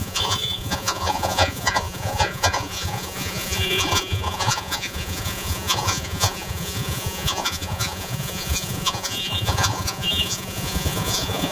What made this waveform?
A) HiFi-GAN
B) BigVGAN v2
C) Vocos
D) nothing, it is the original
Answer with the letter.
C